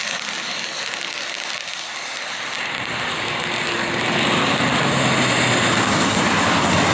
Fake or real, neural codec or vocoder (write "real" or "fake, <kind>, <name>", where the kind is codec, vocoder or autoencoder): real